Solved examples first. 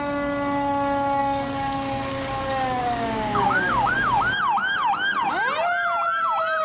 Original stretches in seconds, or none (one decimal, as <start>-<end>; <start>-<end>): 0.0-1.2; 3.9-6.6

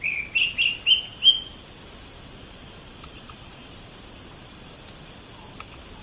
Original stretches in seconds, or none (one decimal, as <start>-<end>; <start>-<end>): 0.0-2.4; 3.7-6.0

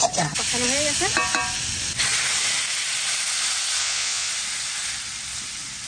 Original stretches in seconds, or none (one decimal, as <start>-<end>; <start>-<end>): 0.0-3.8; 4.3-5.9